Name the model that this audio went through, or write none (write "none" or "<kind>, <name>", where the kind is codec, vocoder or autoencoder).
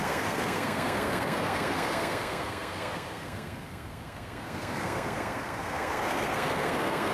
codec, SNAC